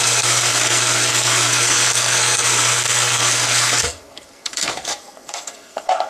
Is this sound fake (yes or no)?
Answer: yes